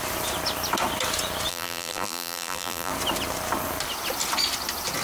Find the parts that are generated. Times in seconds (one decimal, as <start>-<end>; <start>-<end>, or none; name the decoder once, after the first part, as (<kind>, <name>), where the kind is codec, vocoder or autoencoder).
1.5-2.9 (vocoder, BigVGAN v2)